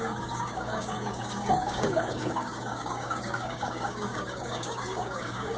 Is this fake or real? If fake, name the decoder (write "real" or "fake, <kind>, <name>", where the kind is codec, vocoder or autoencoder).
fake, codec, DAC